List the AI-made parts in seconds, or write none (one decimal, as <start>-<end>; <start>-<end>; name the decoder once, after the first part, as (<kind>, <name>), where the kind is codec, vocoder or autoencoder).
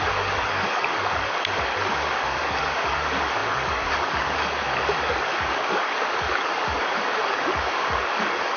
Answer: 0.0-8.6 (codec, DAC)